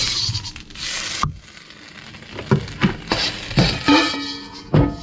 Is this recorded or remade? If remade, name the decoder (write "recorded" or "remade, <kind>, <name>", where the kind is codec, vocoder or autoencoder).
recorded